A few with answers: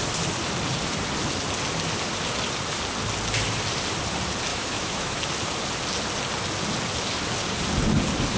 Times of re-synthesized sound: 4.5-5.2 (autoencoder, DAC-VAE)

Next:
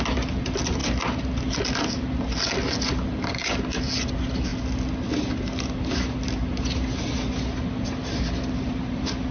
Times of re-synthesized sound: none

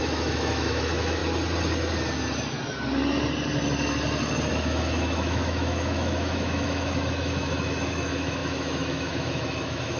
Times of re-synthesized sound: 0.0-1.2 (autoencoder, DAC-VAE); 4.5-10.0

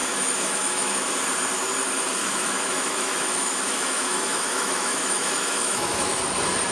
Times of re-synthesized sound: 0.0-1.1 (autoencoder, DAC-VAE); 2.2-6.2

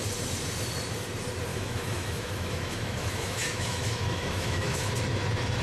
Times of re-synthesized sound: 1.5-4.9 (autoencoder, DAC-VAE)

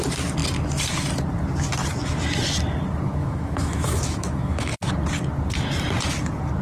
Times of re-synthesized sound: 3.2-4.9 (autoencoder, DAC-VAE)

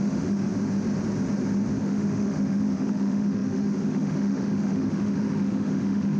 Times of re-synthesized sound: 0.0-0.5 (autoencoder, DAC-VAE); 1.8-6.2

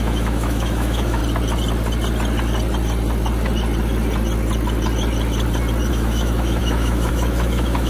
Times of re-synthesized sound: 0.0-1.2 (autoencoder, DAC-VAE); 5.9-7.9